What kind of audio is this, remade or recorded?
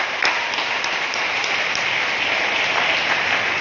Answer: recorded